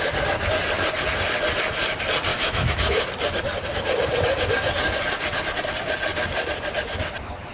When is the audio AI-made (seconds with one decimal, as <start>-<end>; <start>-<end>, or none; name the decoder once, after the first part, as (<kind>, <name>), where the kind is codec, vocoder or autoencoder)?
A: 2.3-3.0 (autoencoder, DAC-VAE)